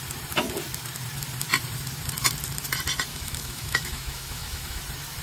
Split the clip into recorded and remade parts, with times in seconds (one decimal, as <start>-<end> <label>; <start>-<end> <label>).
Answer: 0.0-3.1 recorded; 3.1-4.8 remade; 4.8-5.2 recorded